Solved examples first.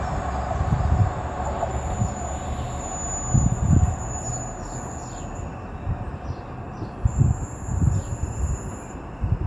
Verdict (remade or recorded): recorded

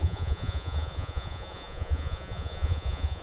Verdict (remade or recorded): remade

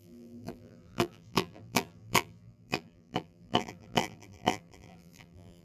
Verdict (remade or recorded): remade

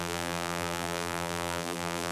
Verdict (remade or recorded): remade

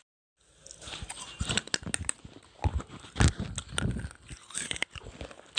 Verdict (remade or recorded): recorded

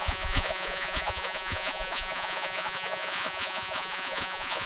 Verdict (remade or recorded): remade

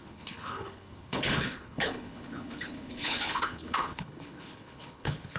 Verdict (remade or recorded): remade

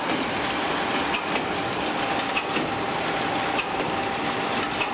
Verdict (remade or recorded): recorded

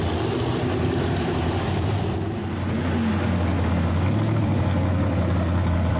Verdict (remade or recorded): recorded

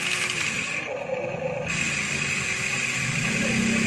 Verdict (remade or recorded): recorded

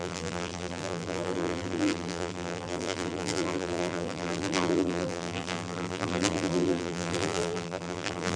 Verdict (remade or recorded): remade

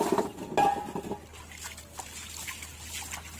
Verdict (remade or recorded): recorded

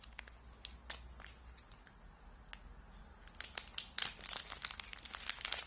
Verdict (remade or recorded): recorded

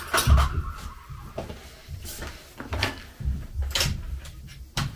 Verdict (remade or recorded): recorded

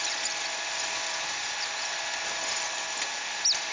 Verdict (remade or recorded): recorded